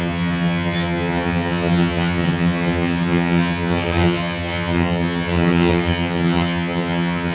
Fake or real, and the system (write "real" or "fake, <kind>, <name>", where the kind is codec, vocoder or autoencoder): fake, vocoder, HiFi-GAN